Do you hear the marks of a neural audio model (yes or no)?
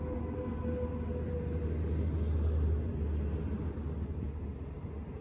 no